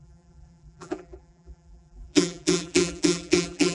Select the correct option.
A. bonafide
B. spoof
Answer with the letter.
B